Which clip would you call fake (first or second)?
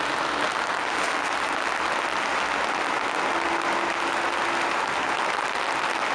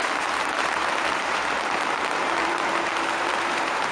second